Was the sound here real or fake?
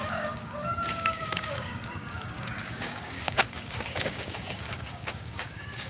fake